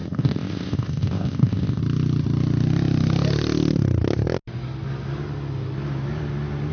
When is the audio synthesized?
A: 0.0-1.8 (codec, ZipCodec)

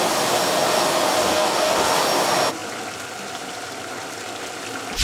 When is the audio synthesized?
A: 1.2-1.9 (codec, DAC)

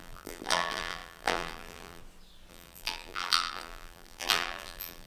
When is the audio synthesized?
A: 0.0-2.0 (vocoder, BigVGAN v2); 2.5-5.1

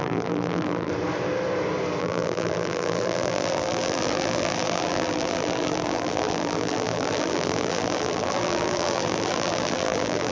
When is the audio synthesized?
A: 0.0-0.9 (vocoder, BigVGAN v2); 2.0-10.3

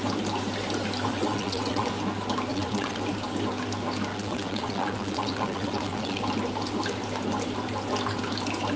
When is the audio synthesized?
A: 1.1-1.9 (vocoder, WaveNeXt); 2.5-3.0; 4.1-6.2